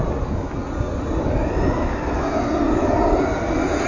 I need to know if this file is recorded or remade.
recorded